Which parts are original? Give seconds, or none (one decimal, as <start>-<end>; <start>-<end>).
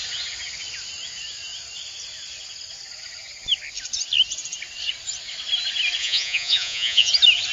0.0-6.0; 7.1-7.5